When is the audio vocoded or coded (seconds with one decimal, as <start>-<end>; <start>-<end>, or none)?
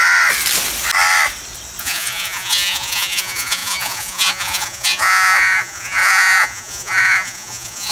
1.8-7.9